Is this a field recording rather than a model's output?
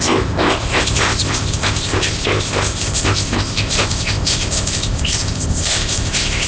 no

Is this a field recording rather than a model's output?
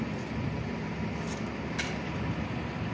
yes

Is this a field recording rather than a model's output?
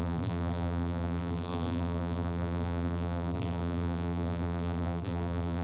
no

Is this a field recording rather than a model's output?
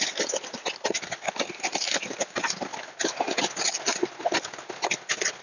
yes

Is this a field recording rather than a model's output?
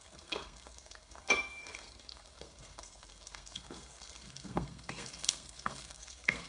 no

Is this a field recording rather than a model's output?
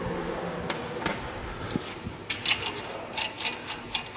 yes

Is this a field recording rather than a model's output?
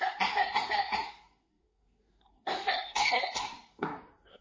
no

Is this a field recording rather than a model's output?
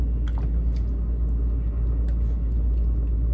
yes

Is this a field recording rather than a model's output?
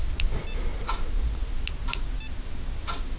yes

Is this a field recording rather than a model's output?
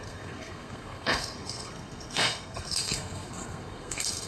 no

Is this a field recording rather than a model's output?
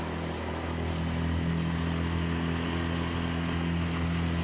yes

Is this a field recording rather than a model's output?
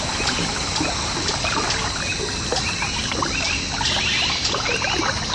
yes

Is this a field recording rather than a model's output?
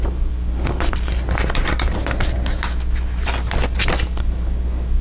yes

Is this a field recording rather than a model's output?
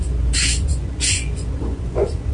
no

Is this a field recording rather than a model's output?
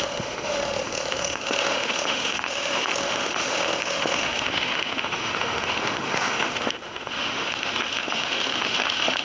no